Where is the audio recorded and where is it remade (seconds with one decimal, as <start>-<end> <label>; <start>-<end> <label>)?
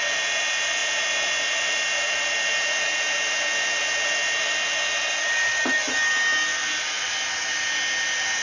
0.0-8.4 recorded